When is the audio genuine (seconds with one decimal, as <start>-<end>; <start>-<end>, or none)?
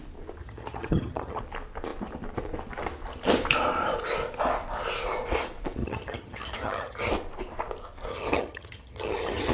0.0-0.4; 1.4-5.8; 7.1-8.1